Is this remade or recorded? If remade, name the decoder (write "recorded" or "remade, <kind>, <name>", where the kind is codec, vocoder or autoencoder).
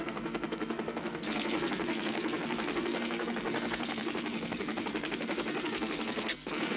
remade, codec, SNAC